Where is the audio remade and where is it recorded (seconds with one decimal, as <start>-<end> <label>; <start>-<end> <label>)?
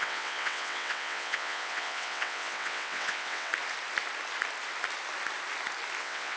0.0-3.5 remade; 3.5-6.0 recorded; 6.0-6.4 remade